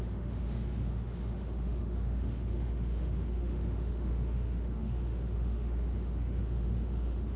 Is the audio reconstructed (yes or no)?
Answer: yes